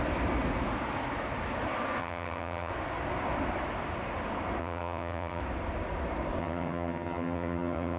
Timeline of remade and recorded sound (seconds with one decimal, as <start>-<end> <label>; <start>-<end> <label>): 0.0-2.0 recorded; 2.0-2.7 remade; 2.7-4.6 recorded; 4.6-5.4 remade; 5.4-6.4 recorded; 6.4-8.0 remade